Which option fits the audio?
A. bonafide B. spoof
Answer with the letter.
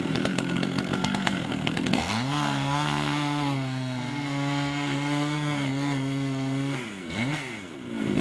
B